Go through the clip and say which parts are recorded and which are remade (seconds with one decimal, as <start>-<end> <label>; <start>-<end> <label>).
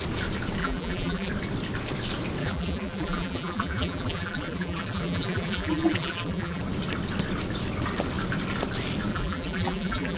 0.0-0.6 recorded; 0.6-1.3 remade; 1.3-2.4 recorded; 2.4-6.6 remade; 6.6-9.1 recorded; 9.1-10.2 remade